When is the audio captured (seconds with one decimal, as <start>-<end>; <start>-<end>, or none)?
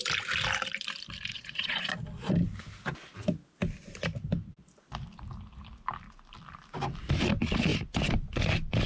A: 0.0-1.3; 1.9-8.9